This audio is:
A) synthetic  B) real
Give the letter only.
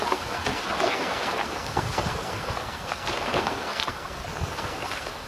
A